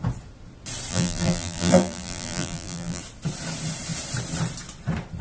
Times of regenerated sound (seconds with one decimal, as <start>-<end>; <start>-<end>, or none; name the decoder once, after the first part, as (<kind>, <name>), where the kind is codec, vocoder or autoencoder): 0.9-3.0 (vocoder, BigVGAN v2)